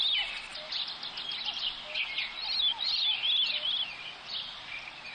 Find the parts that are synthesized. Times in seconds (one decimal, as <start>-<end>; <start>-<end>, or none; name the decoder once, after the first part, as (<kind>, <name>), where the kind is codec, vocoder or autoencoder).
none